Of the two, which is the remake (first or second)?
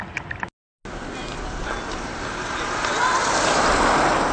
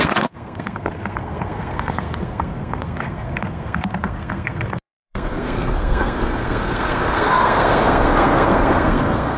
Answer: second